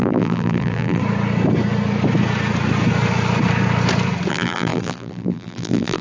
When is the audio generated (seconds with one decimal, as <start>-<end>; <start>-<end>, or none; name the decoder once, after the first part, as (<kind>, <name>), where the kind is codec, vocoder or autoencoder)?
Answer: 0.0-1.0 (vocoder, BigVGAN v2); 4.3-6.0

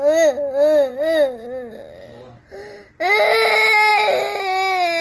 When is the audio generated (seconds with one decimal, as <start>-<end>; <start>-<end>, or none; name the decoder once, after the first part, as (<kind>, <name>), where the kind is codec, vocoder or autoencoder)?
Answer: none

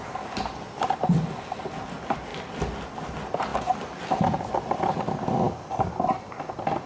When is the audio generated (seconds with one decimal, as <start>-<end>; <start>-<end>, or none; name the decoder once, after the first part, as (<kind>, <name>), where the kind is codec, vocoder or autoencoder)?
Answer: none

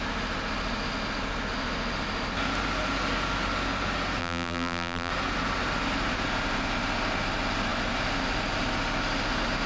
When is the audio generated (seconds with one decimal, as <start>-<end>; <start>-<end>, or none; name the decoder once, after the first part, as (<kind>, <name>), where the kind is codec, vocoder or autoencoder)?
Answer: 4.2-5.1 (vocoder, BigVGAN v2)